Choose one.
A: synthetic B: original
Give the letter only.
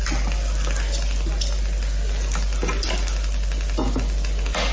B